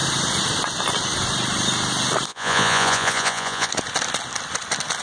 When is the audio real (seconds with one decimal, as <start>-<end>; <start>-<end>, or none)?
0.0-2.3; 3.7-5.0